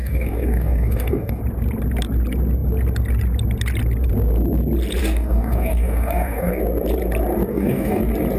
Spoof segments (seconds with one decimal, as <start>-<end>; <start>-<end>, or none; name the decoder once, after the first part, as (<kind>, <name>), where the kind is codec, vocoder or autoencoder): 0.0-1.4 (codec, DAC); 5.0-6.6; 7.5-8.0